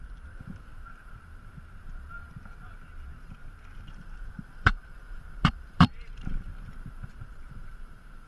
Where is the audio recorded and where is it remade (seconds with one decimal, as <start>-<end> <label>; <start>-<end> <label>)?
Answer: 0.0-0.7 remade; 0.7-3.9 recorded; 3.9-6.5 remade; 6.5-7.1 recorded; 7.1-8.3 remade